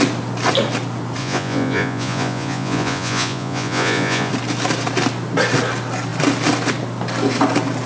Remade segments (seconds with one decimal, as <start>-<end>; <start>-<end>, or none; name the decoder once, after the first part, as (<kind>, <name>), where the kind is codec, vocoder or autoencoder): 1.2-4.3 (vocoder, Vocos)